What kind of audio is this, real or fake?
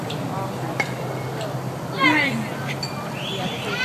real